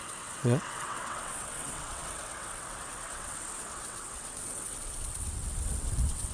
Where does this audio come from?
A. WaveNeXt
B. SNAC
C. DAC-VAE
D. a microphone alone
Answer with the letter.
A